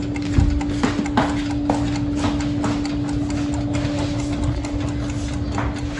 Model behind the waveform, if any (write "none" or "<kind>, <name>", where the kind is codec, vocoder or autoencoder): none